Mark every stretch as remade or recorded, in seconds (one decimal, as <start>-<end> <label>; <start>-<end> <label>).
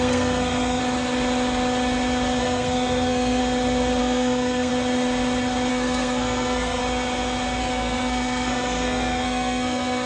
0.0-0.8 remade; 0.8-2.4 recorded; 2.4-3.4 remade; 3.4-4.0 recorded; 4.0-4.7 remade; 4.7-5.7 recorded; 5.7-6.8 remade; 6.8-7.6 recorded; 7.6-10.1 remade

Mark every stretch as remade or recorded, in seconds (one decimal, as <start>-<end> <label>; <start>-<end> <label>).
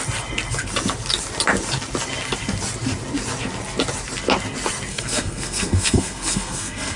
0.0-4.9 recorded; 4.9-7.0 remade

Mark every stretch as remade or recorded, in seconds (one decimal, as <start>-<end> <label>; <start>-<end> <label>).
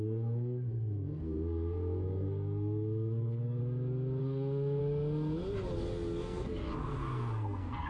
0.0-3.6 remade; 3.6-4.2 recorded; 4.2-4.8 remade; 4.8-6.2 recorded; 6.2-7.9 remade